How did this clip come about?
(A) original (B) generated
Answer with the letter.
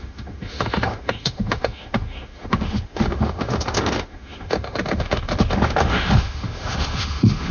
B